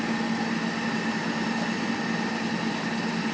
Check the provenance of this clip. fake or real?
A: real